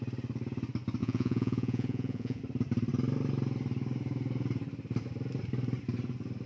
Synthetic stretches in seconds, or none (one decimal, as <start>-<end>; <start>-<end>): 1.0-2.4